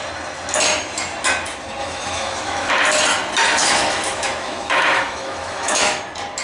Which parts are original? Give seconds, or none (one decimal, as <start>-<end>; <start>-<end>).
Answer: 0.0-1.8; 2.7-3.6; 6.0-6.4